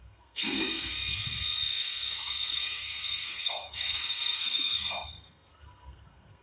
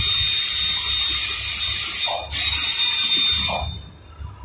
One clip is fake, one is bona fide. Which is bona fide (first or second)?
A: second